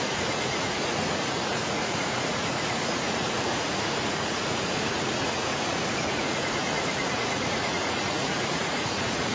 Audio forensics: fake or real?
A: fake